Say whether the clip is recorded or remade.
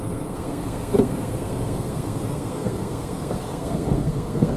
remade